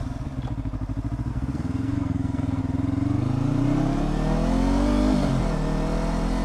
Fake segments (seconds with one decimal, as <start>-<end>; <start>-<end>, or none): 1.3-2.6